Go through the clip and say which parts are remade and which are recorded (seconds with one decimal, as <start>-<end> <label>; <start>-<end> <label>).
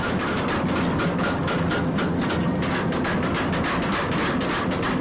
0.0-5.0 recorded